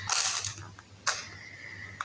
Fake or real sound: real